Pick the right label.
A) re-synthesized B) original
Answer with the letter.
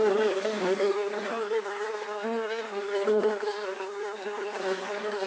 A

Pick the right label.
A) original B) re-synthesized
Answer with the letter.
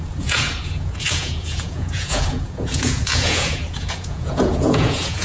B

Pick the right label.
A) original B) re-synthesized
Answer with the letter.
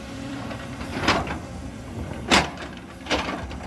B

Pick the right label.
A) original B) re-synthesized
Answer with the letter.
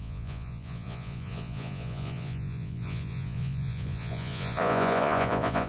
B